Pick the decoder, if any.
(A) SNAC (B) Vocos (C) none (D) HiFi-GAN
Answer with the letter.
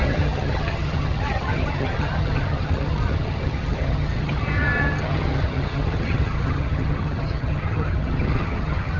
D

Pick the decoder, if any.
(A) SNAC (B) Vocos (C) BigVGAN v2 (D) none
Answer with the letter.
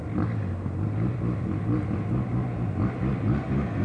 D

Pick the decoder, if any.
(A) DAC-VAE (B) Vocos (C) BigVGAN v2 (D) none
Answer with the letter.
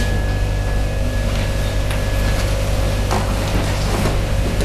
D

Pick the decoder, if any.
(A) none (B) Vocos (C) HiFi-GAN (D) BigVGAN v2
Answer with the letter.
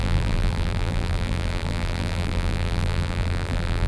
D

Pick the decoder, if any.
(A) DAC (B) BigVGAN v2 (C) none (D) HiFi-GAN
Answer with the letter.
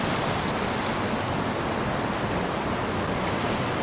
C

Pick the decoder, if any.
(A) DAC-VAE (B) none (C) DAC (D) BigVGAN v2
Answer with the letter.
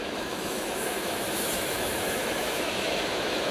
A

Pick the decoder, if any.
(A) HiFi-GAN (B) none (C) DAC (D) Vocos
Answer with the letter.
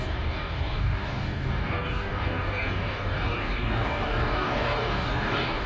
C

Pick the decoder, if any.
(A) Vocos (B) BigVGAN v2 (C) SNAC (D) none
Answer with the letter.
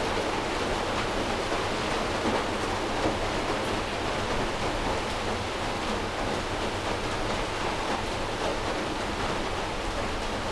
D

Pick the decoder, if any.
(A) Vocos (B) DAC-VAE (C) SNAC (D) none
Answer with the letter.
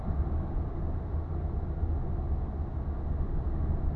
D